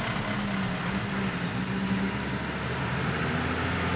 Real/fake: real